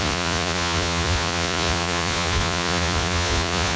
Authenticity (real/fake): fake